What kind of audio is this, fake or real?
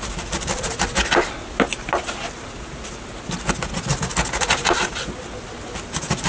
real